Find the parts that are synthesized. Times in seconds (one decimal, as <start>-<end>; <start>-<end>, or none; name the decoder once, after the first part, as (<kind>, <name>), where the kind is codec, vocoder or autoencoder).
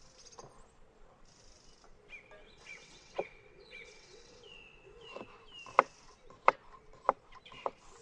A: 2.4-5.1 (vocoder, WaveNeXt)